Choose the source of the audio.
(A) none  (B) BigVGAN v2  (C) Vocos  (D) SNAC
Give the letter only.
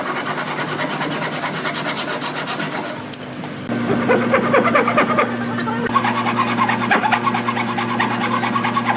A